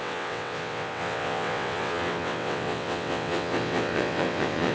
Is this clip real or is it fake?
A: fake